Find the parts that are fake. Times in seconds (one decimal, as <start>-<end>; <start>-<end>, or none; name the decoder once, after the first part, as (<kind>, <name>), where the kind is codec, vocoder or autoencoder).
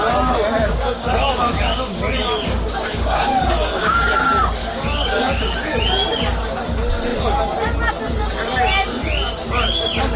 0.7-4.1 (codec, DAC); 4.6-5.8